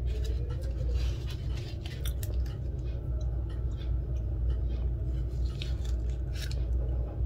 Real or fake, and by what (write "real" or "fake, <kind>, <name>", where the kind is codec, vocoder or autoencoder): real